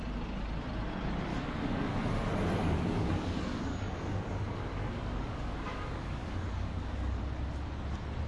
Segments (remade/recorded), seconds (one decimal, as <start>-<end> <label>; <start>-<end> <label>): 0.0-1.3 recorded; 1.3-2.0 remade; 2.0-2.6 recorded; 2.6-7.2 remade; 7.2-8.3 recorded